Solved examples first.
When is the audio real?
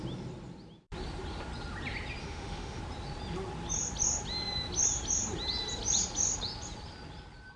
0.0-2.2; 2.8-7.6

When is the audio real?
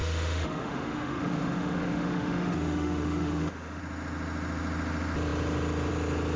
3.8-6.4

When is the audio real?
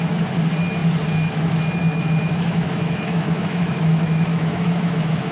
0.0-1.8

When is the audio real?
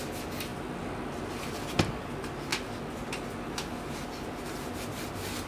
0.0-5.5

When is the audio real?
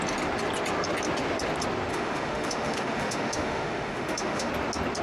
0.0-1.9; 4.5-5.0